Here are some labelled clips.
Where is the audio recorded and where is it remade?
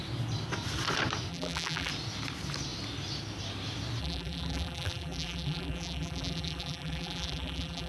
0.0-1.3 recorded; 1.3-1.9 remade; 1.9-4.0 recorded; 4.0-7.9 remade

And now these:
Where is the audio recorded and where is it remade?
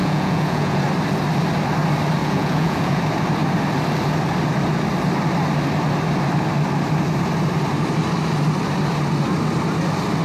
0.0-0.8 remade; 0.8-2.2 recorded; 2.2-3.0 remade; 3.0-10.2 recorded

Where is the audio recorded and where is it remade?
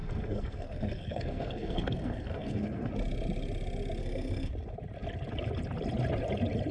0.0-2.9 remade; 2.9-4.0 recorded; 4.0-4.5 remade; 4.5-6.7 recorded